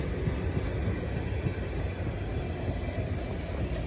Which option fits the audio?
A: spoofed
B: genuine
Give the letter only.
B